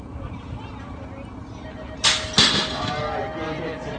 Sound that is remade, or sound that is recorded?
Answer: recorded